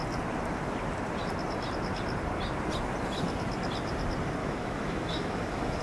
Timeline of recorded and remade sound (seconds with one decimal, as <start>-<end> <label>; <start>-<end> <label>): 0.0-4.4 recorded; 4.4-5.8 remade